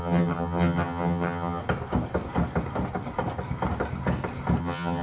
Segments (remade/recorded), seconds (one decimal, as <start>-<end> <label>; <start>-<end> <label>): 0.0-1.6 remade; 1.6-4.6 recorded; 4.6-5.0 remade